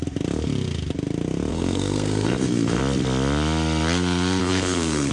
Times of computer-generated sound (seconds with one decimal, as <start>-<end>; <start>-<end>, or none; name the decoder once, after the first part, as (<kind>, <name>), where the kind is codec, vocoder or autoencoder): 1.5-2.8 (codec, SNAC); 4.4-5.1